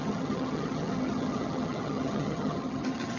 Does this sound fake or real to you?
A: fake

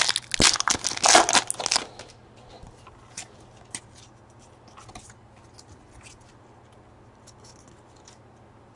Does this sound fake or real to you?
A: real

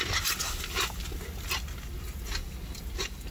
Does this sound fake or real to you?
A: real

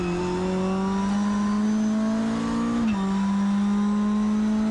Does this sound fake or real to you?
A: real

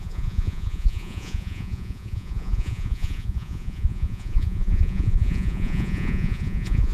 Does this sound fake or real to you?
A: fake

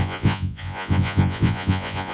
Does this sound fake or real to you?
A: fake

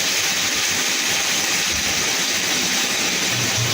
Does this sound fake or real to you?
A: real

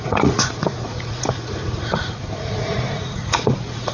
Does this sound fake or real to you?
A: fake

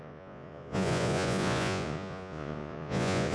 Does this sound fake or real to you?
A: fake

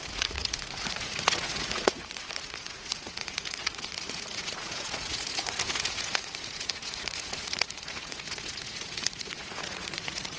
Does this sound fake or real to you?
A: fake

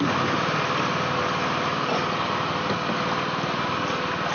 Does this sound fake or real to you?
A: real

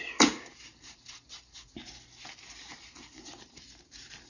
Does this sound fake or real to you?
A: fake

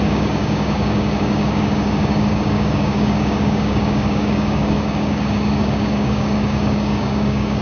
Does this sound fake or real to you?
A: fake